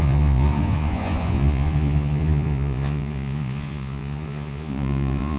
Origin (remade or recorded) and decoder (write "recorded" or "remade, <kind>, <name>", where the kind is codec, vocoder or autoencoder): remade, vocoder, Vocos